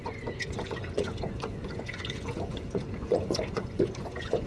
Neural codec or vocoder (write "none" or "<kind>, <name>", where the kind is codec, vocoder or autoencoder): vocoder, Vocos